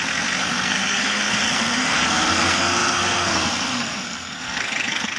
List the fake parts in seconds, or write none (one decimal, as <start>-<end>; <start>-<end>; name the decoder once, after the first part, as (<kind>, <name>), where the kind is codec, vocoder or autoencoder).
0.0-5.2 (codec, SNAC)